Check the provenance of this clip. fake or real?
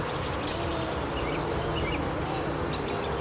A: real